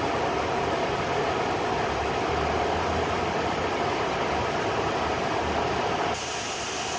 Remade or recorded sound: recorded